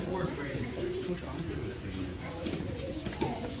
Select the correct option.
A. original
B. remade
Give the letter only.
B